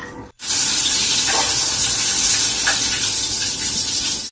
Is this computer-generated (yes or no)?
no